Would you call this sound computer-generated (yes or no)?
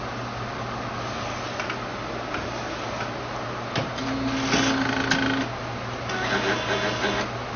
no